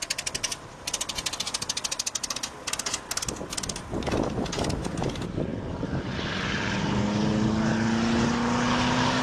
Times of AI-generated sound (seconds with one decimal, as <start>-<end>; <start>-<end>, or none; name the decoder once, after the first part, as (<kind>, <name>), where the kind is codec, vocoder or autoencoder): none